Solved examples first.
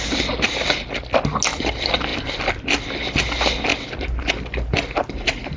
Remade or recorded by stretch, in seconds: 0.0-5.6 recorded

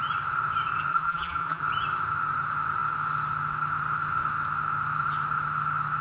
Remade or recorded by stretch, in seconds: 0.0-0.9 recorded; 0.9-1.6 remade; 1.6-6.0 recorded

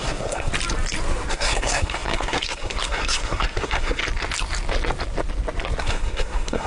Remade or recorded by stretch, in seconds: 0.0-0.5 remade; 0.5-1.3 recorded; 1.3-4.0 remade; 4.0-5.8 recorded; 5.8-6.7 remade